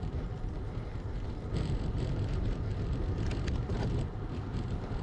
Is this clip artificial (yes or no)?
yes